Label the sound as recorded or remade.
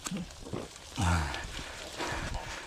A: recorded